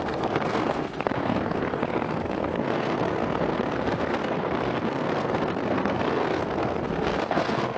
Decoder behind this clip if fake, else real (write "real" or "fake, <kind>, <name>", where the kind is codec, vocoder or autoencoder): fake, codec, SNAC